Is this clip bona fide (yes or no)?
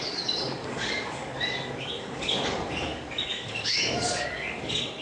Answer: no